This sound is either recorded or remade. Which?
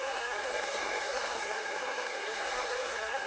remade